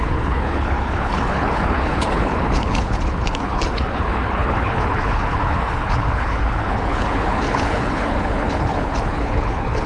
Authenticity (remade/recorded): remade